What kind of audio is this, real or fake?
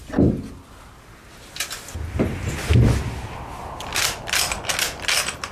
real